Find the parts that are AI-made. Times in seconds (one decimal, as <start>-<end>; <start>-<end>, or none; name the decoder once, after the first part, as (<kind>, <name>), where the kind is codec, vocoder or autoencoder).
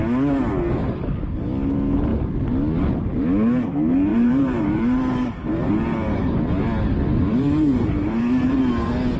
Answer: 4.1-5.7 (vocoder, BigVGAN v2); 7.3-8.6